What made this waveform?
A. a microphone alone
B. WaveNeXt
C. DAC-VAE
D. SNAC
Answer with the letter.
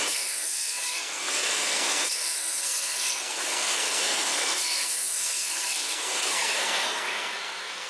D